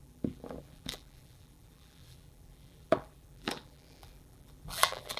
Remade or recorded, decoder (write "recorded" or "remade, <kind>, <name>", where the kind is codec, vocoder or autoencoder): remade, vocoder, BigVGAN v2